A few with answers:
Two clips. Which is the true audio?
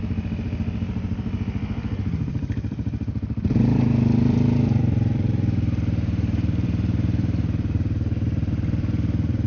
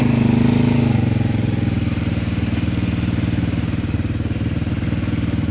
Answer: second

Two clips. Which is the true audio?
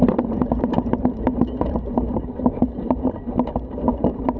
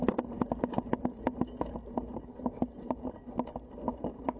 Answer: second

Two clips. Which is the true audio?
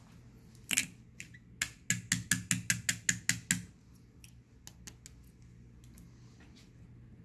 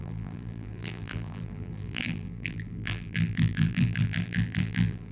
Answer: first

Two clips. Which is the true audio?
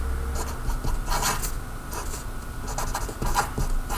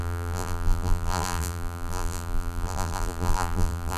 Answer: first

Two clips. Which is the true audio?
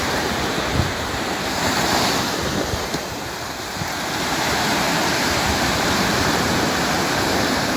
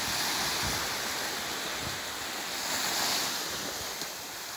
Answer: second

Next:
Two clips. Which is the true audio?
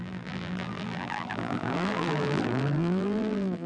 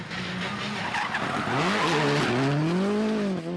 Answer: second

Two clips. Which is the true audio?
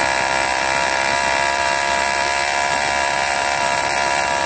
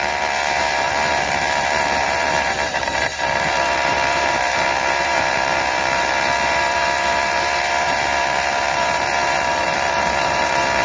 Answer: first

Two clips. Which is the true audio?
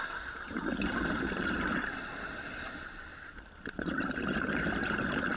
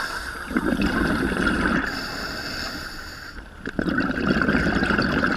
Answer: second